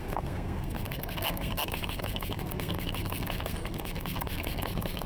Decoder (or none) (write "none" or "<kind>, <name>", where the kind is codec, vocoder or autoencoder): codec, SNAC